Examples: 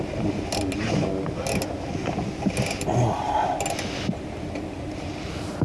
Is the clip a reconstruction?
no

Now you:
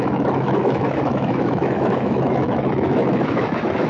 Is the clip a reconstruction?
yes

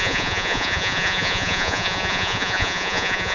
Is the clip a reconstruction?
yes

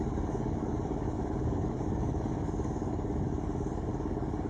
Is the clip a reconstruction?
yes